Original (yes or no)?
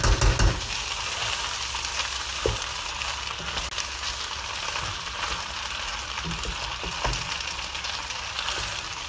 yes